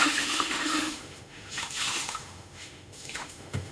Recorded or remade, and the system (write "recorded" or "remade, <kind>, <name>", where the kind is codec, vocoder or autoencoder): remade, autoencoder, DAC-VAE